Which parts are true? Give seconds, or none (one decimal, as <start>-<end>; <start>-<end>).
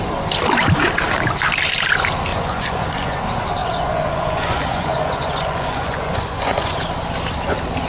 0.0-2.3; 3.2-3.6; 6.8-7.9